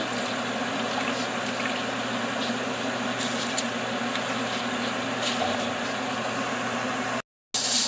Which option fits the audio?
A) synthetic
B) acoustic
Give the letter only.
B